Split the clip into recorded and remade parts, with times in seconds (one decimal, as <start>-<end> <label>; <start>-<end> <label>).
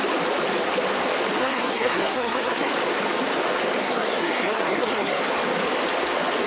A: 0.0-1.4 recorded; 1.4-2.7 remade; 2.7-3.8 recorded; 3.8-5.2 remade; 5.2-6.5 recorded